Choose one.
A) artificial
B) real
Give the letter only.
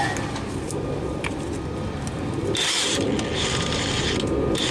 B